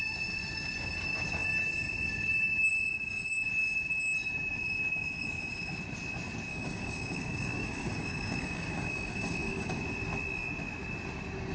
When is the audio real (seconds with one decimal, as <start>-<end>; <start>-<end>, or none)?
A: 0.0-6.5; 9.8-11.5